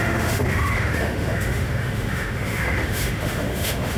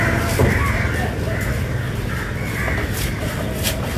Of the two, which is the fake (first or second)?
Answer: first